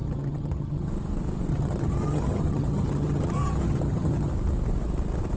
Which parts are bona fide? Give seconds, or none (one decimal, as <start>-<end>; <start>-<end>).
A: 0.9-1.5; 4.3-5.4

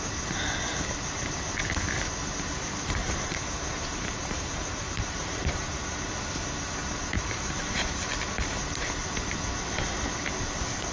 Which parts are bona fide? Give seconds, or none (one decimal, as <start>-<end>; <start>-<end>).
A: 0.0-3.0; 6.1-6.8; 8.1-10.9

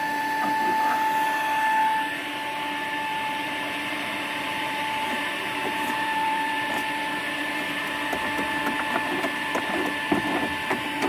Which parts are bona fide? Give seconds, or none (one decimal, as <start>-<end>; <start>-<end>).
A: 0.0-3.1; 7.9-11.1

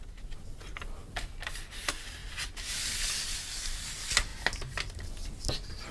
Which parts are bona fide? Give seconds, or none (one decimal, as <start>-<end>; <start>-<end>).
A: 0.0-5.9

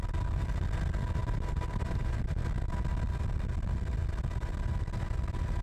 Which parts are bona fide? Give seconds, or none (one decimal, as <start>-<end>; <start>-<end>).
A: 0.0-1.2; 2.4-5.6

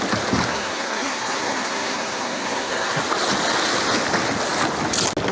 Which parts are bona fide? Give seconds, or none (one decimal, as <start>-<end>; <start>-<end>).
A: 0.0-0.5; 3.0-5.3

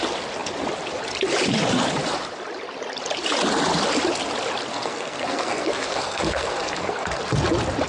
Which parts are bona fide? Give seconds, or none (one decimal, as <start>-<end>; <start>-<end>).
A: 0.0-4.7; 7.2-7.9

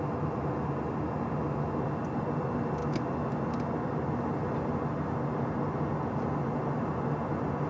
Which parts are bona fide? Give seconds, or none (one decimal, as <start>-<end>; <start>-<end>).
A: 0.0-7.7